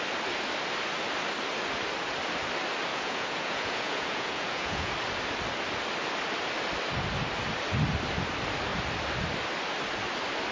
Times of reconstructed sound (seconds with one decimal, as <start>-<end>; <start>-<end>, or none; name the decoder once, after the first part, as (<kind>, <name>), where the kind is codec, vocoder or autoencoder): 2.9-4.9 (vocoder, Vocos)